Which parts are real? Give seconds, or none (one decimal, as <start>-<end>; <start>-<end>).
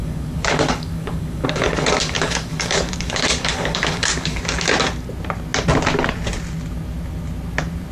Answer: 4.4-7.9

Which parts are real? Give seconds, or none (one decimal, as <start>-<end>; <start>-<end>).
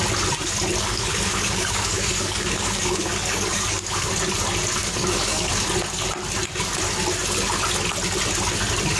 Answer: 0.0-0.8; 4.1-4.8; 5.5-9.0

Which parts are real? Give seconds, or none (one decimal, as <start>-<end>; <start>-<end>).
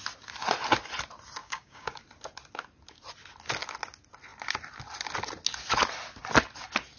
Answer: 0.0-1.4; 2.0-7.0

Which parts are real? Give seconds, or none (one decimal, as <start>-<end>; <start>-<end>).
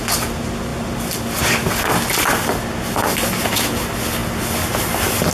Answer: 0.0-5.3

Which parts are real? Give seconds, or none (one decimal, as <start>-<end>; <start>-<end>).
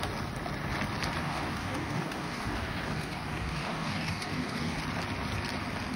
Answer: 0.0-1.2; 4.8-6.0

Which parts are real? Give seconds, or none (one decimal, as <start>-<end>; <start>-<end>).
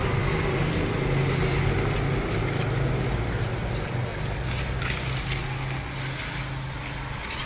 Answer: 0.0-7.5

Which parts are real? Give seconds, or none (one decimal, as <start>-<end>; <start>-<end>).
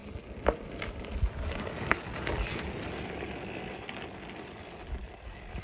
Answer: 0.0-1.6; 2.1-5.6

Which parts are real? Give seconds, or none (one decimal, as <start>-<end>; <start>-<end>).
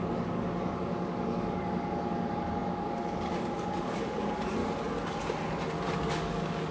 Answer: 4.6-5.9